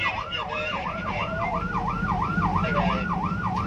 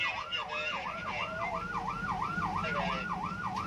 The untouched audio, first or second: second